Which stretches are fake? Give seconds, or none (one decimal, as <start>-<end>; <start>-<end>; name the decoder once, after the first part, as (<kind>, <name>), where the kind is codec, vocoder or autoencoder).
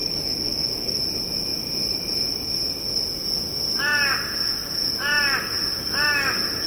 0.0-1.0 (codec, DAC)